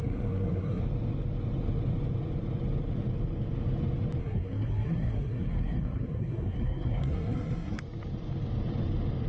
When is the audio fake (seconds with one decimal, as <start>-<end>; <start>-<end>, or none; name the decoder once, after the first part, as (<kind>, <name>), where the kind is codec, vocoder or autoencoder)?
0.0-0.8 (codec, SNAC); 4.2-7.8